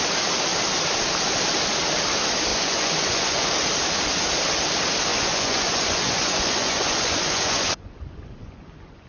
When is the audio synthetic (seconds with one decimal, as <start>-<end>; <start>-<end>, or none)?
2.5-3.5; 5.1-9.1